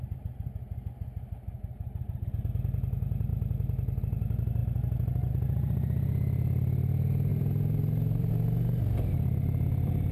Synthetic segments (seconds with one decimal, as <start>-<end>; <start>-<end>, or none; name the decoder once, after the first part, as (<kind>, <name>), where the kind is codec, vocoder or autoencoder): 4.6-5.3 (vocoder, BigVGAN v2); 7.3-8.3